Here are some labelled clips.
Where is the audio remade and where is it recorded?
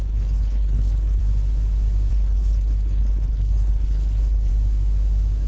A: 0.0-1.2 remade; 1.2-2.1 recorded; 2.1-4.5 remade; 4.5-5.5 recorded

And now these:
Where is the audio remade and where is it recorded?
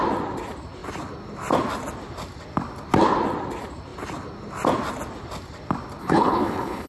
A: 0.0-6.0 recorded; 6.0-6.9 remade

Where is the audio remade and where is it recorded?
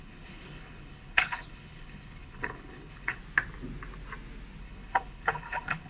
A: 0.0-3.2 remade; 3.2-4.6 recorded; 4.6-5.9 remade